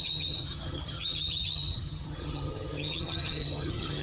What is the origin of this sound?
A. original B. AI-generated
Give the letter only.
B